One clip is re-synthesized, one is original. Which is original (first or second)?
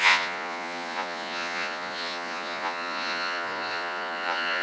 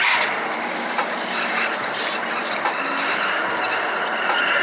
second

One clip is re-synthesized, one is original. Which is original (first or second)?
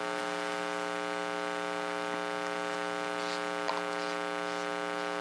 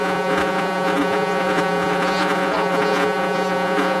first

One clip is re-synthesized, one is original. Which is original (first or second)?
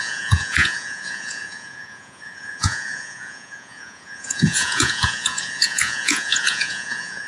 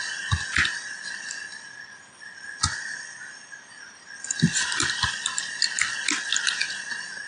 second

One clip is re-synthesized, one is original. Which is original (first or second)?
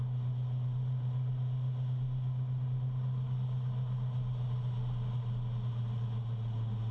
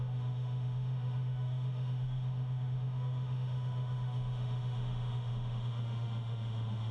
first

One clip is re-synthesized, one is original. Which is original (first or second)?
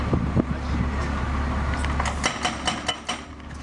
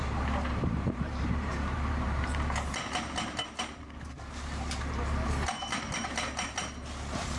first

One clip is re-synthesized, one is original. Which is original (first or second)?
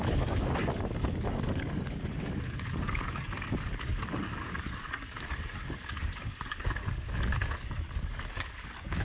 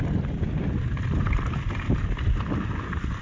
second